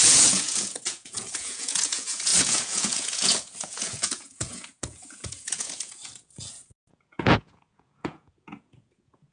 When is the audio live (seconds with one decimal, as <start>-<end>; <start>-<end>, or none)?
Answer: none